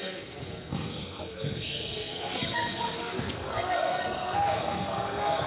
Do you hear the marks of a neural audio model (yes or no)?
yes